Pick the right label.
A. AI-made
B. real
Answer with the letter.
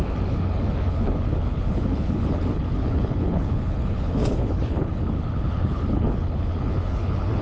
A